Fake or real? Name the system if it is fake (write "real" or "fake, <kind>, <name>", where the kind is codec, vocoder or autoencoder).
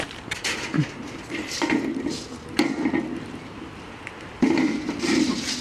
real